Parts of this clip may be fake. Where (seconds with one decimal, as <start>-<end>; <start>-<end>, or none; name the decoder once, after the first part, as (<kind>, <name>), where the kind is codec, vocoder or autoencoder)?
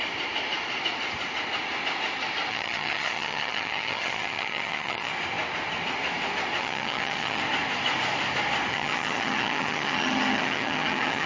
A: 2.5-5.1 (vocoder, HiFi-GAN); 6.6-7.4; 8.7-11.3